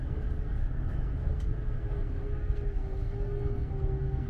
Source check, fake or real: fake